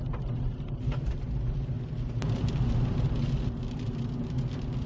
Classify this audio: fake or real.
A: real